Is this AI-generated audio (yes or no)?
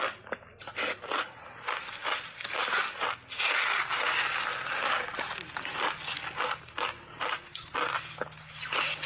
no